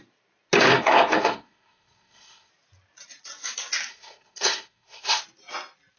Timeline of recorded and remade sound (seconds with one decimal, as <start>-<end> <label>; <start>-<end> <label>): 0.0-0.7 recorded; 0.7-2.5 remade; 2.5-3.9 recorded; 3.9-5.2 remade; 5.2-6.0 recorded